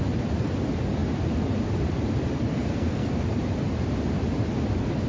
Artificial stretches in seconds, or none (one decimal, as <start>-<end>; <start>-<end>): 2.5-3.1